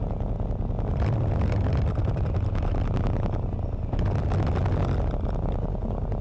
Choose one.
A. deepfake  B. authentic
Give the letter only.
B